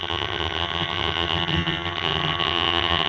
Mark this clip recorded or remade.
remade